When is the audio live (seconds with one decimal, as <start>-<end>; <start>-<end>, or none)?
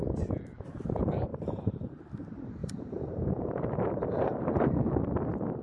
0.0-1.3; 2.0-2.6; 4.7-5.6